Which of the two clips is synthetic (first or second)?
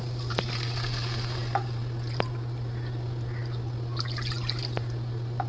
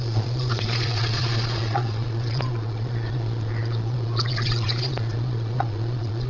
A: second